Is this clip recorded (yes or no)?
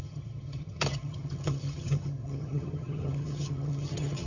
no